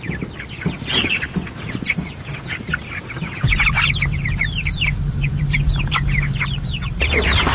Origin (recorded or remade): remade